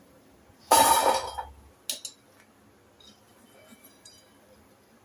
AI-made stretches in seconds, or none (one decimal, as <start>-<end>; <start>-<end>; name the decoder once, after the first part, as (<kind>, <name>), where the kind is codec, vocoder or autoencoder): 0.0-1.0 (vocoder, BigVGAN v2); 3.8-5.0